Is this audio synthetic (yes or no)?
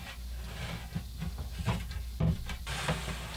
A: no